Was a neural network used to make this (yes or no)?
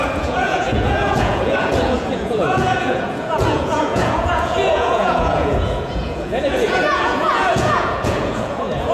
yes